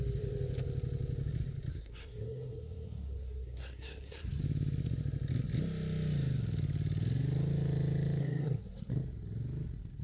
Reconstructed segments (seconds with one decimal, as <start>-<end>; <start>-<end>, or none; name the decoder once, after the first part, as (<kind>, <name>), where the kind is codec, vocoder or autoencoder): 1.7-4.4 (codec, SNAC); 8.2-8.9